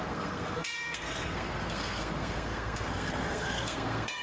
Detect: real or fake fake